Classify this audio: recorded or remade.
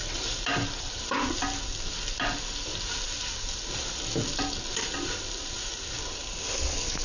recorded